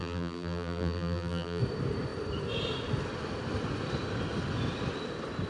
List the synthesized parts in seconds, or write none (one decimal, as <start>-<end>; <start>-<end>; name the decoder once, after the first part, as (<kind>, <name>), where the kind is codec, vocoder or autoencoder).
0.0-1.6 (vocoder, BigVGAN v2)